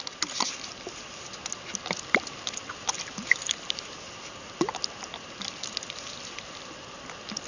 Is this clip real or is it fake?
real